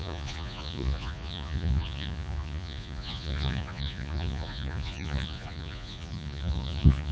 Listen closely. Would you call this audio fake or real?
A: fake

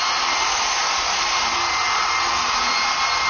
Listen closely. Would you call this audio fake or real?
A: real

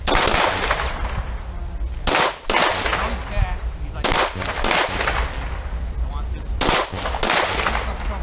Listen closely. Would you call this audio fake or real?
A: real